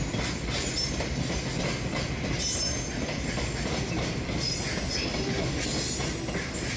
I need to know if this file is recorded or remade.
recorded